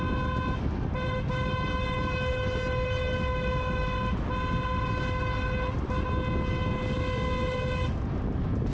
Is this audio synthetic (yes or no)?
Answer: no